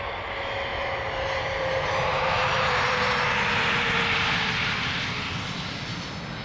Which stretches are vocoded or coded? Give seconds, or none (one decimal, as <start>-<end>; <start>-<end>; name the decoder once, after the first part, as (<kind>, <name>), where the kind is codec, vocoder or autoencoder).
0.7-4.5 (vocoder, BigVGAN v2)